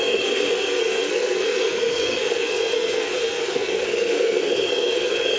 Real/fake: fake